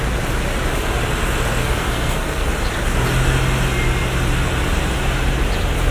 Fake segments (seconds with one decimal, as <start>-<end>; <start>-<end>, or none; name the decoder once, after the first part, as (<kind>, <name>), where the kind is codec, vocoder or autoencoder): 1.6-2.5 (codec, SNAC)